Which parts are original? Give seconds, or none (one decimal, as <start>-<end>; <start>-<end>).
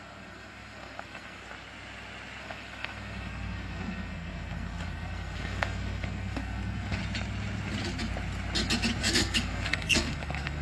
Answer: 1.4-2.4; 7.0-9.0